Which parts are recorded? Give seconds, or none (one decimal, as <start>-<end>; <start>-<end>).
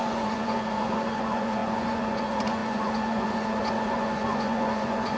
none